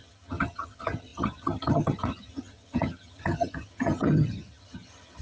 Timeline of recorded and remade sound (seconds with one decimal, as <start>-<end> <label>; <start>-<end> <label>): 0.0-5.2 remade